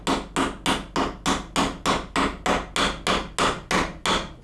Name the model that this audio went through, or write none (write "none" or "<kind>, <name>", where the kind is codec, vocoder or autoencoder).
none